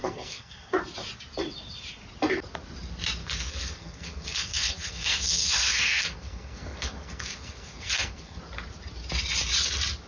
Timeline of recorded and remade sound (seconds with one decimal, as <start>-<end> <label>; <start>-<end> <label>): 0.0-0.8 remade; 0.8-3.2 recorded; 3.2-8.4 remade; 8.4-10.1 recorded

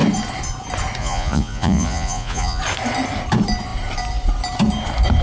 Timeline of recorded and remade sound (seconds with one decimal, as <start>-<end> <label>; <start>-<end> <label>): 0.0-1.0 recorded; 1.0-2.6 remade; 2.6-5.2 recorded

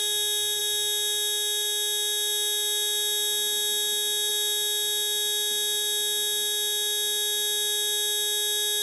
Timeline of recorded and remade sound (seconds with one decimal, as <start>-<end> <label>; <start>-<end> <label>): 0.0-8.8 recorded

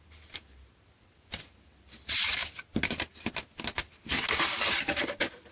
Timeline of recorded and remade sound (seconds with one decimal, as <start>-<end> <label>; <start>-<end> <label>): 0.0-5.5 recorded

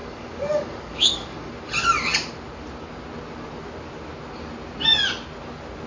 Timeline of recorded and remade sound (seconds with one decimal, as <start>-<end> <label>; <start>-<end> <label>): 0.0-1.5 remade; 1.5-5.9 recorded